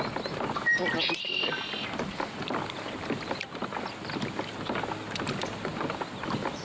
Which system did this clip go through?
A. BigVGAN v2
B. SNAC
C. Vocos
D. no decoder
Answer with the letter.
D